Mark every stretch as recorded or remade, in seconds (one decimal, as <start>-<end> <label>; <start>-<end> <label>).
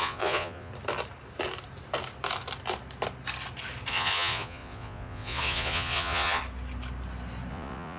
0.0-0.7 remade; 0.7-3.9 recorded; 3.9-6.4 remade; 6.4-7.5 recorded; 7.5-8.0 remade